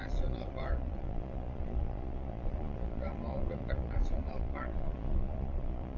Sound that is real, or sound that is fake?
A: fake